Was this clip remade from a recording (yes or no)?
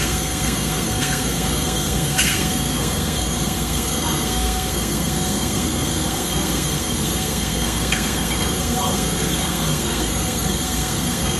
yes